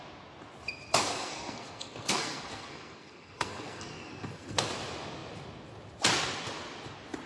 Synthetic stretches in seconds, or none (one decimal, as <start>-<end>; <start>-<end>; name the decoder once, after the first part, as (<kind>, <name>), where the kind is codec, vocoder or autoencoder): 1.0-4.7 (codec, SNAC)